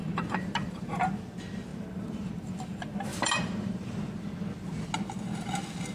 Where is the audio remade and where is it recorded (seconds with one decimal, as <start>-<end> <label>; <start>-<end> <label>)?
0.0-1.1 remade; 1.1-1.7 recorded; 1.7-2.3 remade; 2.3-3.1 recorded; 3.1-4.0 remade; 4.0-5.9 recorded